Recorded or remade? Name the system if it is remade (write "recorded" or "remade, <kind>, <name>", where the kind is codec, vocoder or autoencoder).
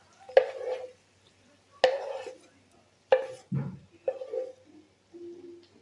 recorded